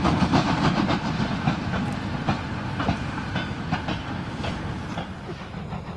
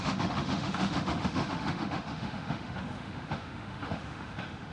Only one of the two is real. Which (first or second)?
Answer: first